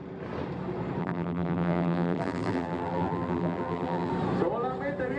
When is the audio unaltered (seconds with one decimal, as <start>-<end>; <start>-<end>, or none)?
0.0-1.0; 4.1-5.2